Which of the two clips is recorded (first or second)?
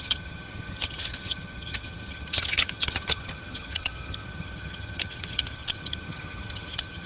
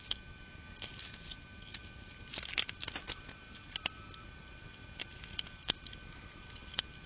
second